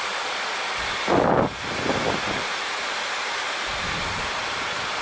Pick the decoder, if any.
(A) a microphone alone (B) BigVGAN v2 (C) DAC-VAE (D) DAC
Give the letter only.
B